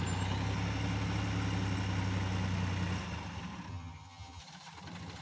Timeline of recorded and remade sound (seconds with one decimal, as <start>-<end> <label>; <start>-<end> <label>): 0.0-3.7 recorded; 3.7-4.4 remade; 4.4-5.2 recorded